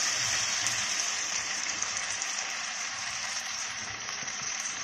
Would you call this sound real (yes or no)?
no